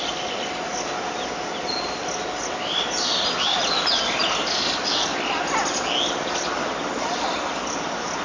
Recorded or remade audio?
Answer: recorded